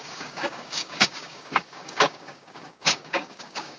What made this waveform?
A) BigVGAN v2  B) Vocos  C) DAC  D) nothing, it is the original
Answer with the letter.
C